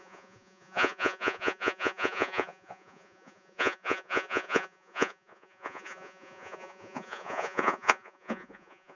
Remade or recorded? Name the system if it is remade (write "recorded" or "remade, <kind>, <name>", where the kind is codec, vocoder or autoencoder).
remade, vocoder, Vocos